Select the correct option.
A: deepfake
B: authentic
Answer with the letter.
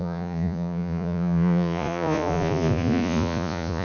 A